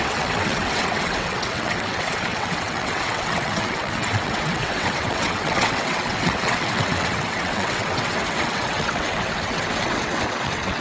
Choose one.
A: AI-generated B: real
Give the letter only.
A